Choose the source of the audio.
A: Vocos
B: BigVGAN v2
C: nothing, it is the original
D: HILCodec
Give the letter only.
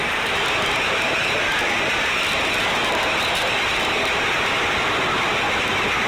B